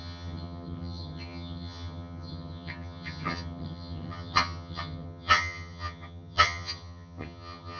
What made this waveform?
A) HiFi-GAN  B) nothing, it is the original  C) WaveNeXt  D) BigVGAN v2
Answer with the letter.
A